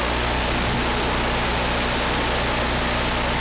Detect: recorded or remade recorded